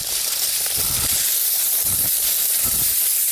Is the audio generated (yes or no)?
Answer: no